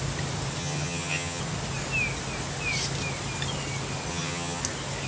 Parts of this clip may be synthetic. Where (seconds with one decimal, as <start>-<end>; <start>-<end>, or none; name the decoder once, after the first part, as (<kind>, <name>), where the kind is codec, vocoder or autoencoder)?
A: 0.6-1.4 (vocoder, HiFi-GAN); 4.1-4.6